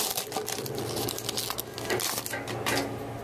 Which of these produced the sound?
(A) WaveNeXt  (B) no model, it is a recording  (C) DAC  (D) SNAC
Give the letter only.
B